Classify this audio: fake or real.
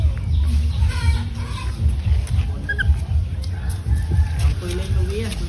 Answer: real